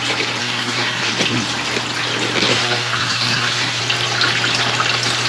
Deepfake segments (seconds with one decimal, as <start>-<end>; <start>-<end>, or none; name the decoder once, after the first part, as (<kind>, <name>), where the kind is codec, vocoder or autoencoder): 0.4-1.1 (codec, SNAC); 2.5-3.8